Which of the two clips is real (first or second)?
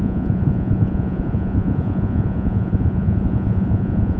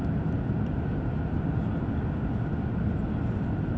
second